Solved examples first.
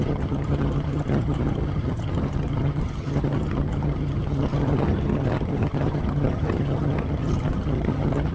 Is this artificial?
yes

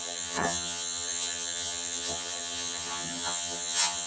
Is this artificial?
yes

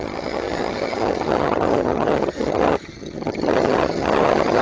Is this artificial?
yes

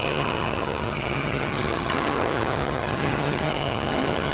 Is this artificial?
yes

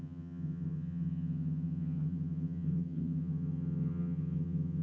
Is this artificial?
yes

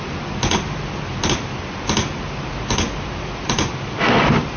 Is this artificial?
no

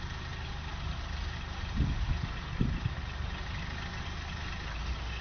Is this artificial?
no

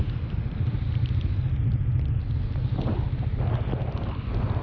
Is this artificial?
no